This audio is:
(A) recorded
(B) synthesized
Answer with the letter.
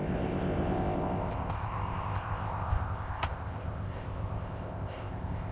B